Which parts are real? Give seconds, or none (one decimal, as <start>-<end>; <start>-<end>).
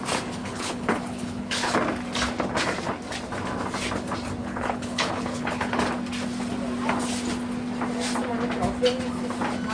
0.0-0.4; 1.8-4.4; 5.8-9.7